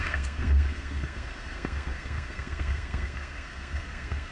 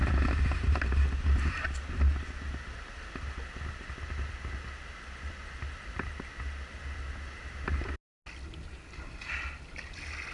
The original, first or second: second